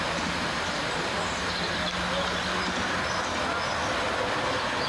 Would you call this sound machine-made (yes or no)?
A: no